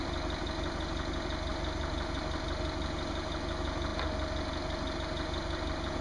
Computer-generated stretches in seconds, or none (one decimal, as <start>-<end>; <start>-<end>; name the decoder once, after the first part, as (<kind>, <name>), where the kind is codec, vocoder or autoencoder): none